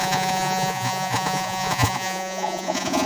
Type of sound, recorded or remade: remade